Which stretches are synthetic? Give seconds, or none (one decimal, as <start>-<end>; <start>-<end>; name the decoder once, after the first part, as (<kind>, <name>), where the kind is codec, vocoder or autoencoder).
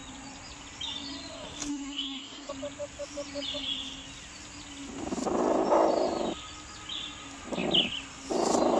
1.7-2.5 (codec, SNAC)